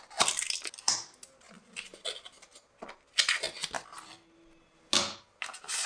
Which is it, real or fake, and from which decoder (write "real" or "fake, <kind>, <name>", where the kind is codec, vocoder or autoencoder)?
real